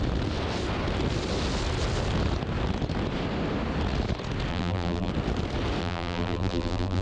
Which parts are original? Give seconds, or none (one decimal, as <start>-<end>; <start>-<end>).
0.0-4.5; 5.1-5.8

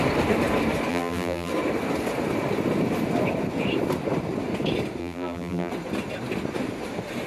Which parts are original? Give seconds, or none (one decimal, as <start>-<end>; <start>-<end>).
0.0-0.9; 1.5-5.0; 5.7-7.3

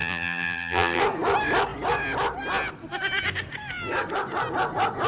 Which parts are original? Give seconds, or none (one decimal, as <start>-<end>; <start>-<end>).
1.0-5.1

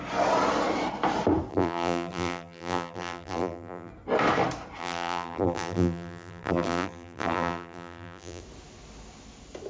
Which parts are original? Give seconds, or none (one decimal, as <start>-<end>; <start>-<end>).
0.0-1.5; 3.9-4.8; 8.4-9.7

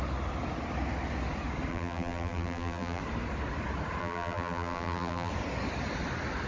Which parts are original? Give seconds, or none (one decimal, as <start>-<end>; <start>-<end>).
0.0-1.7; 3.0-4.0; 5.3-6.5

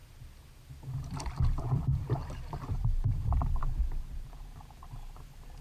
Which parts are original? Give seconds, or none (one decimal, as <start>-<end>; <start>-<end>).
0.0-1.6

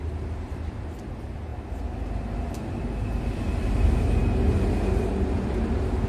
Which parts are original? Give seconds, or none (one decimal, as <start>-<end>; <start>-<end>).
0.0-6.1